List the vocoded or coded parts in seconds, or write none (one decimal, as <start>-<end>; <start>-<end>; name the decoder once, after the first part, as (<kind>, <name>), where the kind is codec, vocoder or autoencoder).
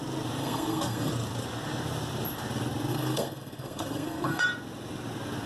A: 0.4-1.1 (codec, SNAC); 2.9-4.4